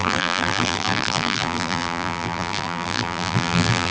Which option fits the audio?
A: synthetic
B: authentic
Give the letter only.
A